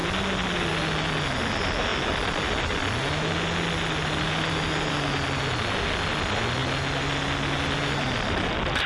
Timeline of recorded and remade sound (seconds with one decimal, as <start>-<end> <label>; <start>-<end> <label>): 0.0-8.9 recorded